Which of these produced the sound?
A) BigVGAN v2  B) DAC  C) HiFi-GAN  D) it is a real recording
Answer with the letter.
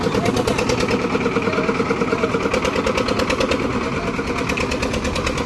D